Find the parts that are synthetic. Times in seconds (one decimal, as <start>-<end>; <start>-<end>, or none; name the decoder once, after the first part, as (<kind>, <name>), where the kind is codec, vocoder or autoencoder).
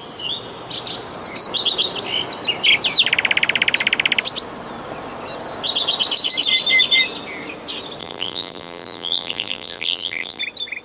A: 8.0-10.4 (vocoder, BigVGAN v2)